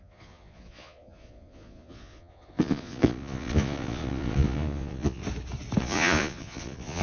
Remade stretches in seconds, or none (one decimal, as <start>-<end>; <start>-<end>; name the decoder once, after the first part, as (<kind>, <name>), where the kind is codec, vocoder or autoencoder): 0.0-5.2 (vocoder, Vocos); 5.8-7.0